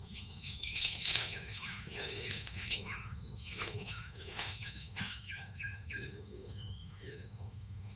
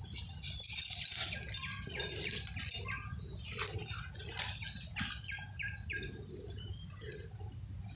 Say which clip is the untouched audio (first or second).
second